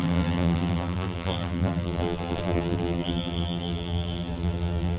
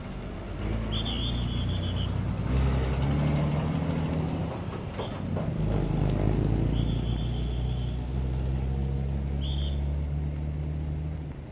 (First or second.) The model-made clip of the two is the first